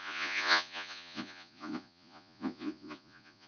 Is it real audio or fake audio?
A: fake